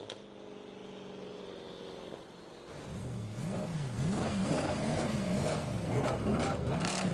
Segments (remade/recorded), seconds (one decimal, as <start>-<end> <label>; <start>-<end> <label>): 0.0-3.0 recorded; 3.0-7.1 remade